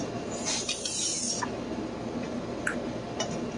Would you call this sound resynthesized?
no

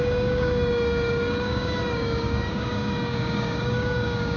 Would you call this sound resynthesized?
yes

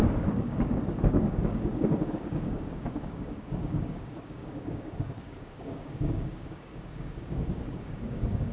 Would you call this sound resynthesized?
yes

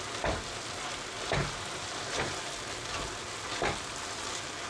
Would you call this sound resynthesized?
no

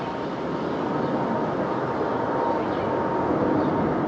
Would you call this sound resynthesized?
no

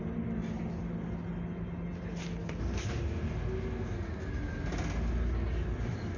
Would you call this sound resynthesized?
no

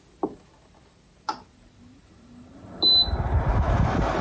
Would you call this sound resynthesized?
no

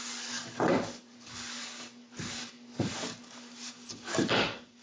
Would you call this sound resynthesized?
yes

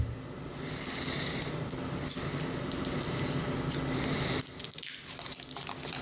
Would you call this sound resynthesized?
no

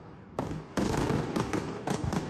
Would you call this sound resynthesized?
yes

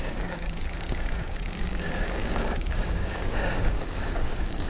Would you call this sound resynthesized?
yes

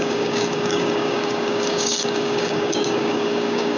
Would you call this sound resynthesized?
yes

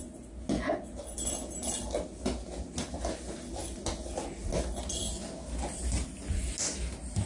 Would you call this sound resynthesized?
no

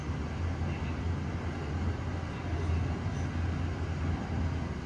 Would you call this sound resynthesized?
no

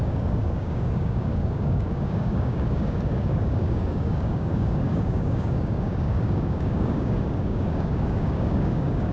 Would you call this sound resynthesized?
yes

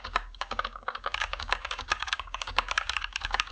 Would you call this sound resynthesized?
yes